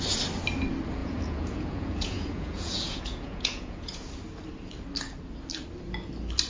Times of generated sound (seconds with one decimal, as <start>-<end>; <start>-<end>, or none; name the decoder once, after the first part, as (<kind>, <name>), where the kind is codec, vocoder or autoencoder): 1.0-4.1 (vocoder, Vocos)